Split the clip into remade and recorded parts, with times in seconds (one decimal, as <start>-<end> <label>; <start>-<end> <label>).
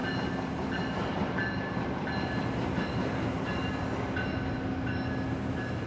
0.0-5.9 recorded